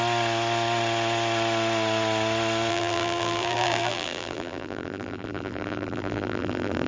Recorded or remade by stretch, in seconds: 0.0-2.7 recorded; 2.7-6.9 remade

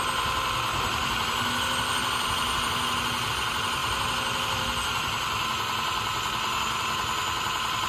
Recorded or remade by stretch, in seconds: 0.0-7.9 recorded

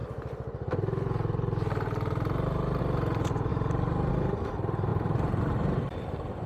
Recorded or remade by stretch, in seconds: 0.0-2.8 remade; 2.8-3.5 recorded; 3.5-4.1 remade; 4.1-4.9 recorded; 4.9-6.5 remade